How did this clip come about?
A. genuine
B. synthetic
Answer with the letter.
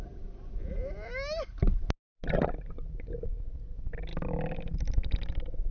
A